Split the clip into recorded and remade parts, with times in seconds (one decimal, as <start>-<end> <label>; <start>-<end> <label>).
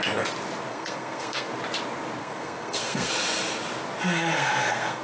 0.0-0.7 recorded; 0.7-1.5 remade; 1.5-2.2 recorded; 2.2-3.1 remade; 3.1-4.3 recorded; 4.3-5.0 remade